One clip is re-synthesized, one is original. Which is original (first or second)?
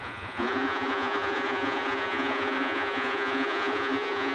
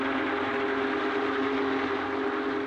second